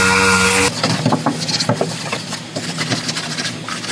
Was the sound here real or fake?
real